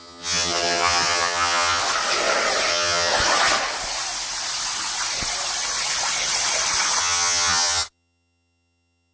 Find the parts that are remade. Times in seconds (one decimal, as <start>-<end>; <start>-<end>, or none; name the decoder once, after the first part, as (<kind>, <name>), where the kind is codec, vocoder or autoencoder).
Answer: 0.0-1.8 (vocoder, HiFi-GAN); 2.7-3.1; 7.0-9.1